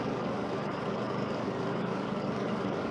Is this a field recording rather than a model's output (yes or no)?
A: no